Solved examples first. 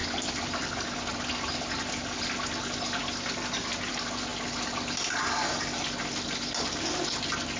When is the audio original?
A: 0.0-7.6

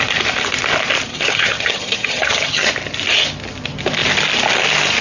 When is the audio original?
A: 0.0-1.1; 2.7-5.0